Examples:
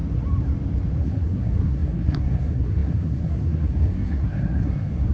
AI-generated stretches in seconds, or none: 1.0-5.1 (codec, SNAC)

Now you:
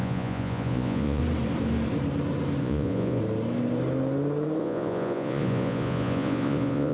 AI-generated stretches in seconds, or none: 0.0-1.2 (vocoder, Vocos); 2.6-3.2; 4.6-6.9

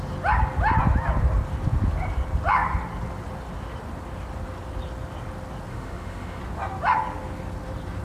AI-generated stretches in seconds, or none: 5.7-6.4 (autoencoder, DAC-VAE)

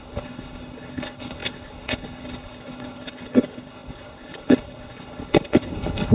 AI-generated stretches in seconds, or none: 0.0-6.1 (codec, HILCodec)